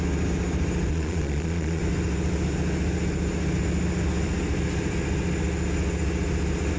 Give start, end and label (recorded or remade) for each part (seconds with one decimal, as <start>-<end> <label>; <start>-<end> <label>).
0.0-0.9 recorded; 0.9-1.8 remade; 1.8-6.8 recorded